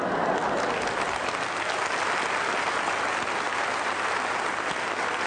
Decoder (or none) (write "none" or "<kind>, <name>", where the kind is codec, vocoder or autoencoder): none